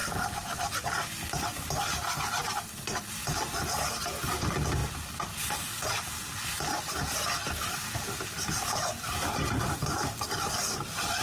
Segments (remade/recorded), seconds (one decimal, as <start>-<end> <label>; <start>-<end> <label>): 0.0-1.0 remade; 1.0-4.8 recorded; 4.8-5.9 remade; 5.9-8.6 recorded; 8.6-10.6 remade; 10.6-11.2 recorded